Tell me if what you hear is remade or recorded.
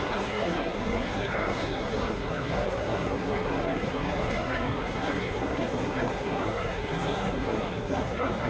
remade